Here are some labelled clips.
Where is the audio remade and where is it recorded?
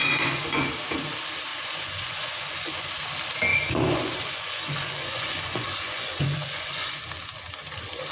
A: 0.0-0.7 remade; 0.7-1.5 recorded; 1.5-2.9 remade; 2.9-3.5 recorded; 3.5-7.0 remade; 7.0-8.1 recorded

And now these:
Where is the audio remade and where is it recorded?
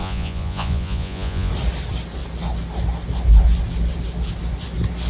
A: 0.0-1.5 remade; 1.5-5.1 recorded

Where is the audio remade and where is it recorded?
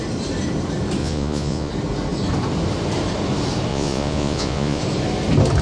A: 0.0-1.0 recorded; 1.0-1.7 remade; 1.7-3.7 recorded; 3.7-4.8 remade; 4.8-5.6 recorded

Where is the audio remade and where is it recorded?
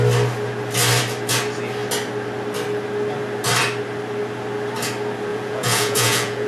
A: 0.0-5.3 recorded; 5.3-6.5 remade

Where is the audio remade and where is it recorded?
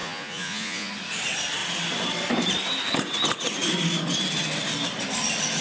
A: 0.0-0.9 remade; 0.9-5.6 recorded